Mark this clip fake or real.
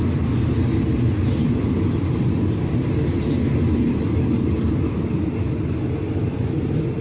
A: real